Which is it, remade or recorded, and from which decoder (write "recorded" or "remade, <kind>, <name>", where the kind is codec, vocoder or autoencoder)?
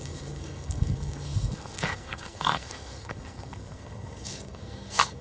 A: remade, codec, SNAC